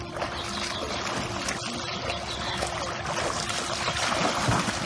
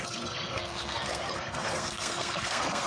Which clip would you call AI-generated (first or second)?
second